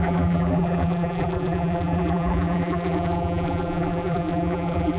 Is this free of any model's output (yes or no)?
no